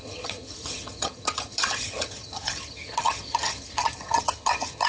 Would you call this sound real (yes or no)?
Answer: no